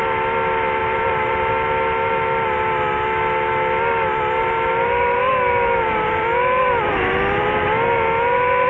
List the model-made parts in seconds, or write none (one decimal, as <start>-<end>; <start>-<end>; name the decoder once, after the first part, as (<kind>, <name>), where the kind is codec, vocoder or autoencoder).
0.8-1.5 (vocoder, BigVGAN v2); 4.4-5.2